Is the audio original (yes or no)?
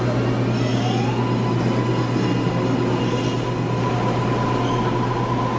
yes